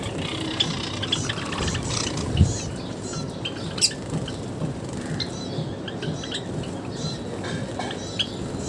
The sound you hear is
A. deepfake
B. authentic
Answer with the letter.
B